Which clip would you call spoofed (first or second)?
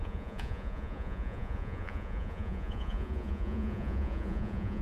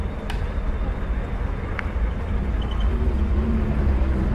first